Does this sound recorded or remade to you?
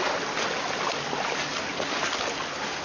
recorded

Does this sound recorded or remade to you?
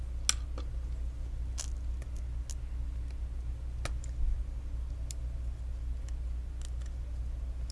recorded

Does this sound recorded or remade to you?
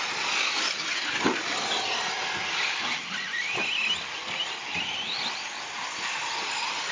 recorded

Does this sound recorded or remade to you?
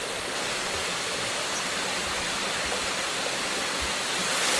recorded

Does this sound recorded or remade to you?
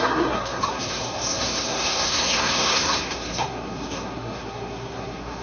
remade